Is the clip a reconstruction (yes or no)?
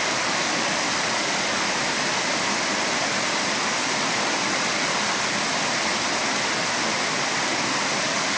no